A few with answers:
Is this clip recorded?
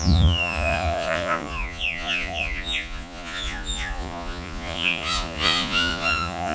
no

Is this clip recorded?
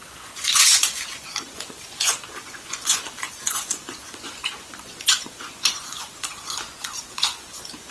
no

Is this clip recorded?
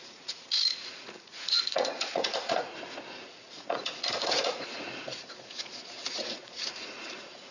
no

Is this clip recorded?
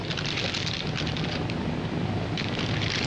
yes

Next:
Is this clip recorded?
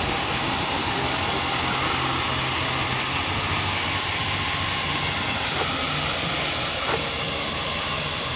yes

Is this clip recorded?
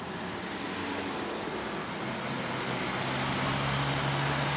yes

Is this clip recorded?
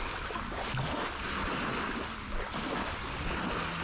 yes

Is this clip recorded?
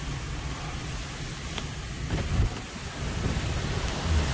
yes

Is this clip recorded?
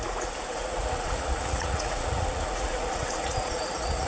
no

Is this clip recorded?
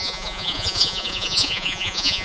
no